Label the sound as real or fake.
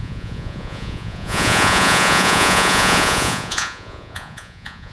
fake